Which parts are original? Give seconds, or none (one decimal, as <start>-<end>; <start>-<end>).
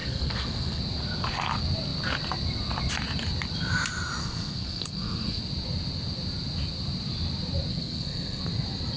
0.8-4.2; 5.4-7.7; 8.4-9.0